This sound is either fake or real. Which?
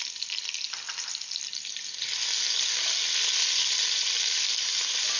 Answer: real